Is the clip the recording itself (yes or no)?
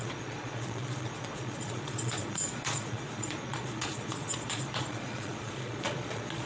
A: no